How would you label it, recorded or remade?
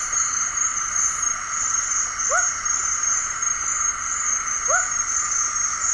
recorded